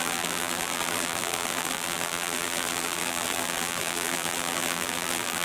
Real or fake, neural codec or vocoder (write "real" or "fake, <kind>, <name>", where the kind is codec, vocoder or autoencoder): fake, vocoder, BigVGAN v2